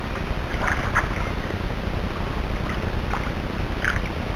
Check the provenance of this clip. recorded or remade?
recorded